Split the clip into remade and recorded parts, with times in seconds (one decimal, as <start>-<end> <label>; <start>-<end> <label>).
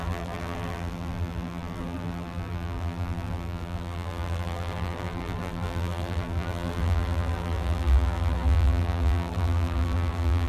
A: 0.0-10.5 remade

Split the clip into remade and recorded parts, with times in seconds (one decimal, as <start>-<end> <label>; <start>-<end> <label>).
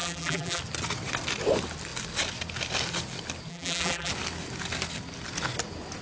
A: 0.0-0.6 remade; 0.6-3.5 recorded; 3.5-4.1 remade; 4.1-6.0 recorded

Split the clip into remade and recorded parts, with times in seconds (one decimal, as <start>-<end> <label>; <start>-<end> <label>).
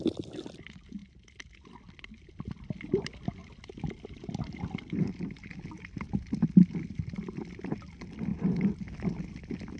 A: 0.0-3.4 recorded; 3.4-4.2 remade; 4.2-9.8 recorded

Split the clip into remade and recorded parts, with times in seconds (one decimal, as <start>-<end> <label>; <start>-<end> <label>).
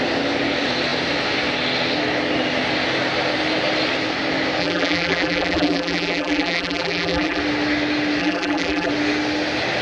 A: 0.0-4.6 recorded; 4.6-7.4 remade; 7.4-8.2 recorded; 8.2-8.9 remade; 8.9-9.8 recorded